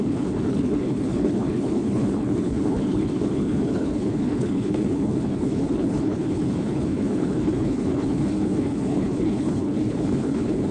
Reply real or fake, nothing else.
fake